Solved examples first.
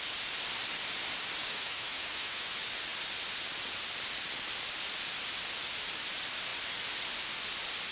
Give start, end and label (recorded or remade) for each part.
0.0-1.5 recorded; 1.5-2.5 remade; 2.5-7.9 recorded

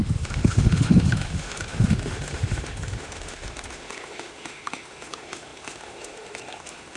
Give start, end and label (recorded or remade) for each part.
0.0-7.0 remade

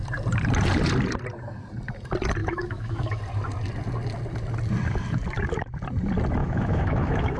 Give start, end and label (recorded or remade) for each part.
0.0-2.4 recorded; 2.4-3.2 remade; 3.2-6.4 recorded; 6.4-7.4 remade

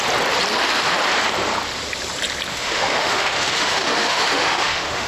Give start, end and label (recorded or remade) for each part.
0.0-2.5 recorded; 2.5-5.1 remade

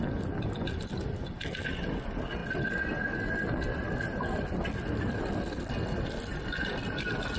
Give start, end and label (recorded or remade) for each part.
0.0-7.4 recorded